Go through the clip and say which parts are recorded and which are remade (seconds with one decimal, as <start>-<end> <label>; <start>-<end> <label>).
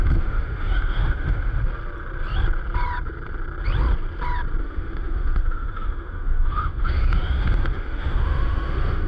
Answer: 0.0-1.6 remade; 1.6-4.6 recorded; 4.6-9.1 remade